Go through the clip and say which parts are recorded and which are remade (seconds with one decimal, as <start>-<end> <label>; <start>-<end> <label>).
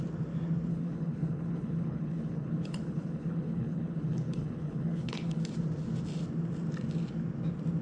0.0-0.7 recorded; 0.7-5.4 remade; 5.4-7.8 recorded